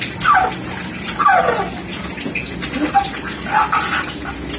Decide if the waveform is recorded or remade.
recorded